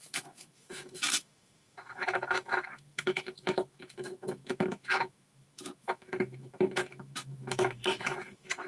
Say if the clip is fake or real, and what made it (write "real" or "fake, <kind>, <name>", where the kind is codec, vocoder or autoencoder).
fake, autoencoder, DAC-VAE